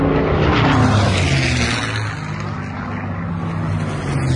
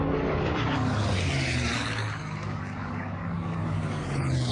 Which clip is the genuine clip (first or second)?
first